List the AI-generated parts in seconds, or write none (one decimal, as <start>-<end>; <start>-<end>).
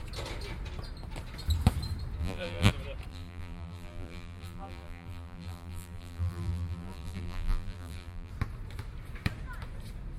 2.2-2.7; 3.1-8.3